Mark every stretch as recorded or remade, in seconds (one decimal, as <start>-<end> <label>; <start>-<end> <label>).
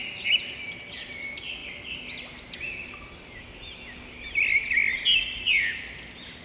0.0-6.4 recorded